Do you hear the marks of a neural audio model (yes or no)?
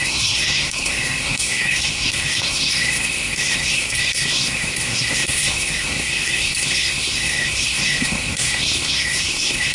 yes